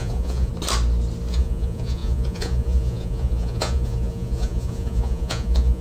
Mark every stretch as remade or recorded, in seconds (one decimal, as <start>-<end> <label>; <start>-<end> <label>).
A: 0.0-0.5 remade; 0.5-1.3 recorded; 1.3-5.8 remade